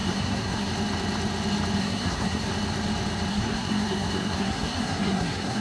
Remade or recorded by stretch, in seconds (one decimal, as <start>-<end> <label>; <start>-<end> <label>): 0.0-0.7 remade; 0.7-1.8 recorded; 1.8-2.5 remade; 2.5-3.3 recorded; 3.3-5.6 remade